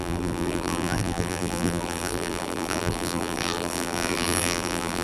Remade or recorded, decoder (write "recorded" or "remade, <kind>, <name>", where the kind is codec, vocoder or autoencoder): remade, vocoder, BigVGAN v2